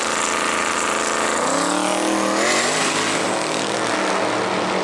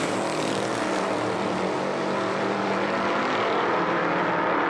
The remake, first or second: second